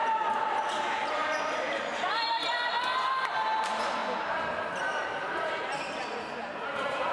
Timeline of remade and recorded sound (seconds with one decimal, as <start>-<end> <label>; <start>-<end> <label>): 0.0-1.9 remade; 1.9-3.3 recorded; 3.3-4.0 remade; 4.0-4.8 recorded; 4.8-7.1 remade